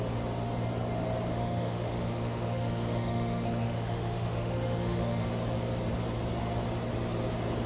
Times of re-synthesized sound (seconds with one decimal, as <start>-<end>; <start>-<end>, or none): 1.3-5.2